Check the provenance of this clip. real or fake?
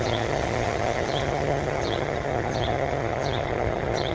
fake